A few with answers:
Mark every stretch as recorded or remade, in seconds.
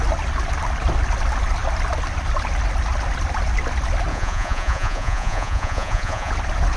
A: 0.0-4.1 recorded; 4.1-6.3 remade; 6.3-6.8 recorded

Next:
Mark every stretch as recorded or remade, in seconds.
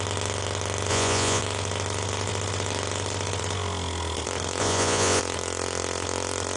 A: 0.0-0.9 recorded; 0.9-1.4 remade; 1.4-4.6 recorded; 4.6-5.2 remade; 5.2-6.6 recorded